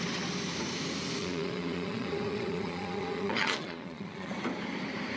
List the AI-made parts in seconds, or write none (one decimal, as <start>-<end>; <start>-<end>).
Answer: 1.2-4.3